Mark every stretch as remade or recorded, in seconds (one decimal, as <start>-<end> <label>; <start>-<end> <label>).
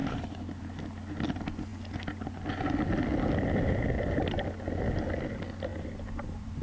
0.0-0.6 remade; 0.6-5.7 recorded; 5.7-6.6 remade